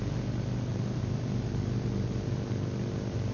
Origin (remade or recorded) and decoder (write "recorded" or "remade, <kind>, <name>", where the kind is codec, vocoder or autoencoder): recorded